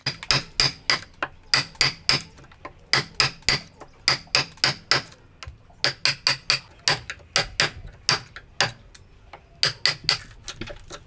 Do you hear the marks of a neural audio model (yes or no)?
no